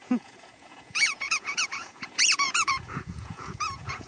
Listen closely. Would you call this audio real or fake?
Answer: fake